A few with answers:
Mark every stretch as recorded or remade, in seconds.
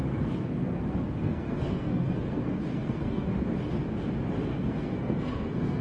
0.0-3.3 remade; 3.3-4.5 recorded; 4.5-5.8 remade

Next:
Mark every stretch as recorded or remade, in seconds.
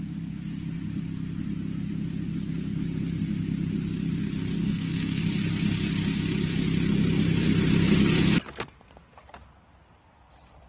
0.0-4.6 recorded; 4.6-5.2 remade; 5.2-10.7 recorded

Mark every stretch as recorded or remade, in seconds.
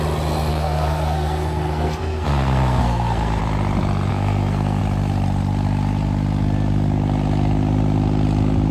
0.0-0.5 recorded; 0.5-3.4 remade; 3.4-4.1 recorded; 4.1-4.8 remade; 4.8-8.7 recorded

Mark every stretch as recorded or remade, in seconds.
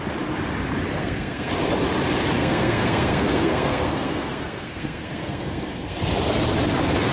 0.0-0.9 recorded; 0.9-1.5 remade; 1.5-2.4 recorded; 2.4-6.0 remade; 6.0-7.1 recorded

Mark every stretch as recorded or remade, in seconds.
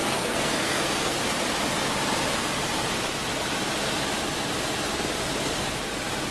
0.0-1.2 remade; 1.2-6.3 recorded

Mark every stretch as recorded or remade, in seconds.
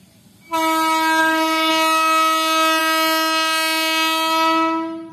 0.0-1.2 recorded; 1.2-1.7 remade; 1.7-5.1 recorded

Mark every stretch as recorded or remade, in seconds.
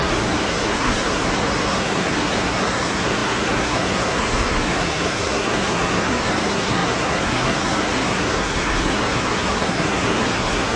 0.0-10.8 remade